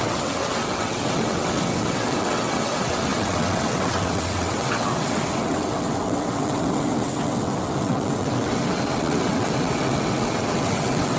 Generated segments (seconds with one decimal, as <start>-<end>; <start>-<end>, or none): 0.0-11.2

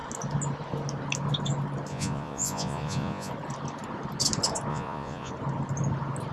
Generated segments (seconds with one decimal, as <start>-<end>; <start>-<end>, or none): 1.9-3.3; 4.7-5.3

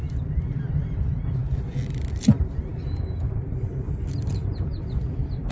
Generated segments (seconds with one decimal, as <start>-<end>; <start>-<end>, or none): 0.0-1.4; 2.1-2.7; 4.1-5.5

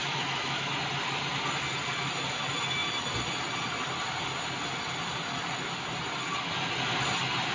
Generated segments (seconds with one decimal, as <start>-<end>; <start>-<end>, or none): 0.0-0.7

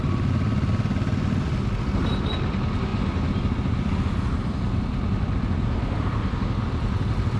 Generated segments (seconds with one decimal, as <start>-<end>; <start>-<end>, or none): none

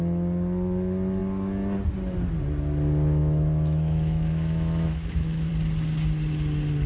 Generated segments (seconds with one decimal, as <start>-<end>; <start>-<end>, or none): 3.2-5.5

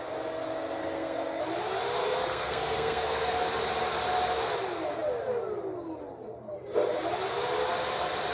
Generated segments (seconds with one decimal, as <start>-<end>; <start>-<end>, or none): 0.8-1.4; 2.0-3.4

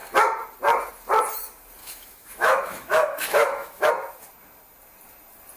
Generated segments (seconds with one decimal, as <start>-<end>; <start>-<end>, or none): 1.8-3.9